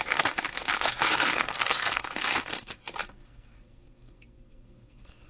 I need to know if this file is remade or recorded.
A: remade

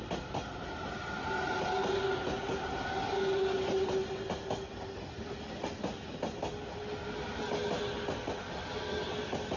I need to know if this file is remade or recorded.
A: recorded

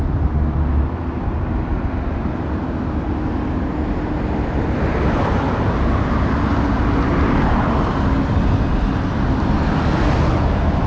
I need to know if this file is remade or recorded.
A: recorded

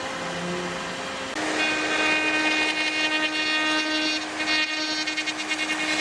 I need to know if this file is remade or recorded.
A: recorded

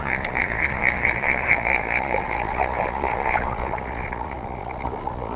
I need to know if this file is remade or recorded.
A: remade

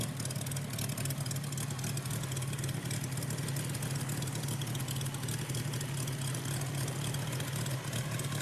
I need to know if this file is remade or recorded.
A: recorded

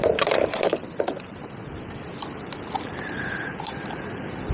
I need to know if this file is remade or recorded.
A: remade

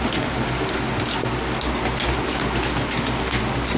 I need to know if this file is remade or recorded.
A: recorded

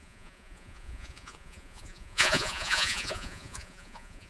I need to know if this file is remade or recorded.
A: remade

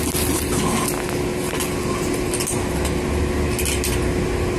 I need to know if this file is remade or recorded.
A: recorded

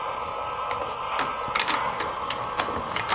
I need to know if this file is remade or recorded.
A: recorded